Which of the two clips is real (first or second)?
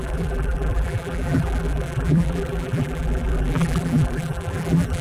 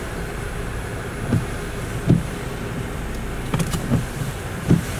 second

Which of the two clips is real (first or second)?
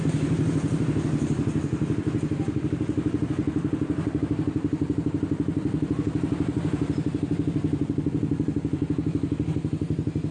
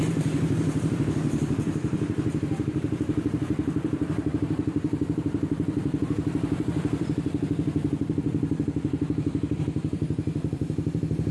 first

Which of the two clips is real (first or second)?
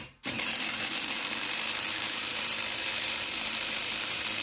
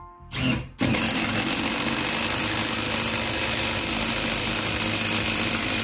second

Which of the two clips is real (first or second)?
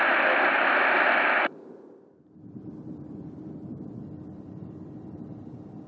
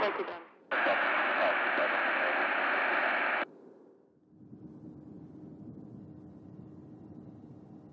second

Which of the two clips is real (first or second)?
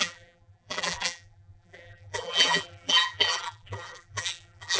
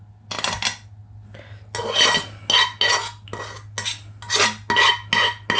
second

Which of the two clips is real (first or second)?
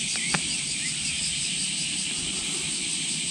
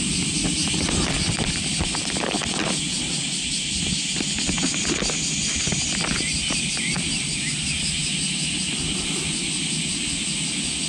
second